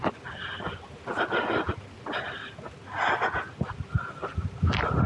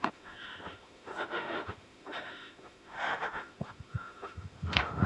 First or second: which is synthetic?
second